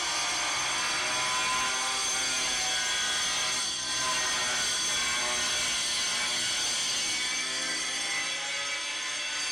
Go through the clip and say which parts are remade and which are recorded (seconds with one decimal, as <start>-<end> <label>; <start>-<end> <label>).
0.0-9.5 recorded